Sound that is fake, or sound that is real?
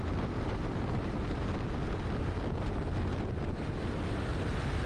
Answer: real